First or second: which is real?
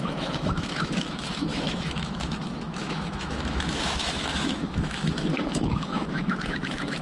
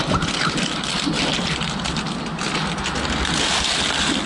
second